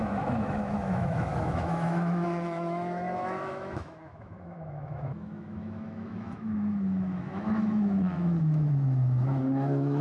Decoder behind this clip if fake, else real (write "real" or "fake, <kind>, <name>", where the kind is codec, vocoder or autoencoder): fake, autoencoder, DAC-VAE